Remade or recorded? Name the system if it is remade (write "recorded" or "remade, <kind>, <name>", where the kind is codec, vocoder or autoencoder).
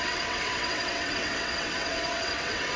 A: remade, vocoder, WaveNeXt